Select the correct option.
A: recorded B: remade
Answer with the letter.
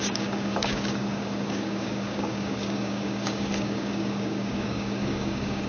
B